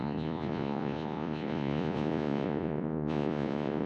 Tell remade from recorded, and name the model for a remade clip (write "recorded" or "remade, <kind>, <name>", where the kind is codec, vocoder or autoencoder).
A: remade, vocoder, Vocos